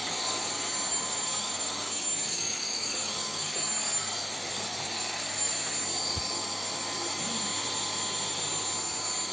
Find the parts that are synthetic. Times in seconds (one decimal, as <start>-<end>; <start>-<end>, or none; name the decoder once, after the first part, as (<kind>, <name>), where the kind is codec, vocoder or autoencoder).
0.0-0.5 (codec, DAC); 0.9-5.5